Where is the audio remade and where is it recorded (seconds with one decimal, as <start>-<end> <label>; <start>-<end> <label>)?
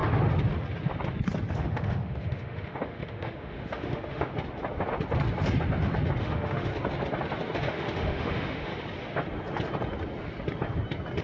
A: 0.0-1.5 recorded; 1.5-4.3 remade; 4.3-6.2 recorded; 6.2-6.7 remade; 6.7-7.7 recorded; 7.7-8.7 remade; 8.7-11.2 recorded